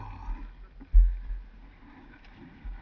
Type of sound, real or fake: real